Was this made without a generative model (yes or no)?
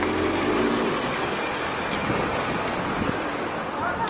yes